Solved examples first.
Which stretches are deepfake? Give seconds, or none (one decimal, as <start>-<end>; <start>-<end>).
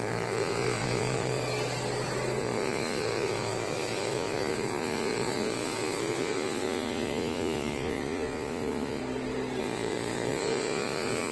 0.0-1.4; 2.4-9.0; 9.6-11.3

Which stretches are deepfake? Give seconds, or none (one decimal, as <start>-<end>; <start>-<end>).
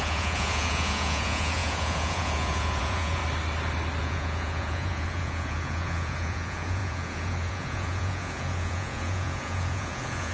0.0-3.2; 4.0-10.3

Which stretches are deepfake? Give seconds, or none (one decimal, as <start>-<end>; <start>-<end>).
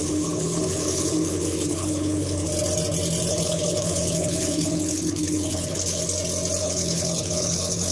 0.0-2.5; 3.3-6.0; 6.6-7.9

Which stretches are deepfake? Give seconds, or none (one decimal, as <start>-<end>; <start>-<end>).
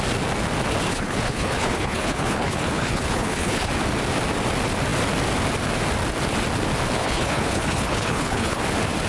0.9-3.7; 7.0-8.6